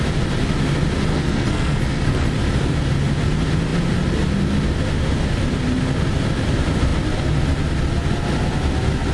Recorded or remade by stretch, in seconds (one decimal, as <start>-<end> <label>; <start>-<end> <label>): 0.0-1.1 recorded; 1.1-2.3 remade; 2.3-9.1 recorded